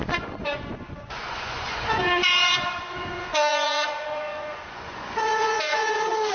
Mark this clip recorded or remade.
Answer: remade